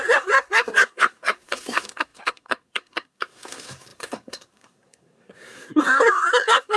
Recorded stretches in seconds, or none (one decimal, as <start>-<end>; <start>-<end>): none